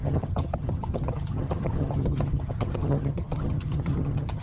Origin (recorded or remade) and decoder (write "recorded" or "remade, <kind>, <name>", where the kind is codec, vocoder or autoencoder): remade, vocoder, HiFi-GAN